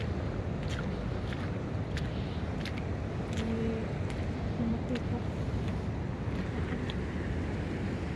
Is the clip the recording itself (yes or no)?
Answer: yes